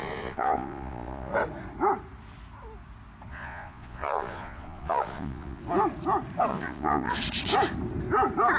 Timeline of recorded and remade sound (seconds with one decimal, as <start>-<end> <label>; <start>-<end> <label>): 0.0-1.3 remade; 1.3-3.3 recorded; 3.3-5.6 remade; 5.6-6.5 recorded; 6.5-7.2 remade; 7.2-8.6 recorded